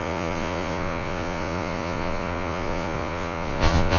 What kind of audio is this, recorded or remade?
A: remade